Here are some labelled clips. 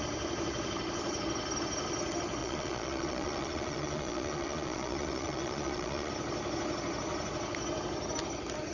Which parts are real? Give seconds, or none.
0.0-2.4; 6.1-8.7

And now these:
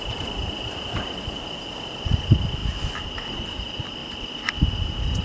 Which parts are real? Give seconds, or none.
0.0-5.2

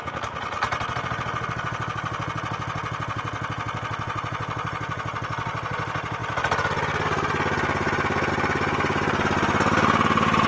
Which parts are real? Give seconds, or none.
0.0-10.5

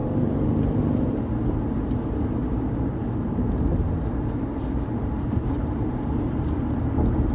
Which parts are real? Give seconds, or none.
1.2-2.4; 6.8-7.3

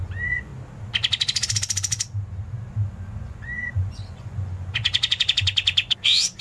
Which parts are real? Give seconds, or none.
0.5-2.9

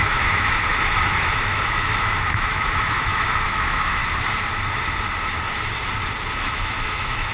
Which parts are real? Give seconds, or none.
4.0-6.3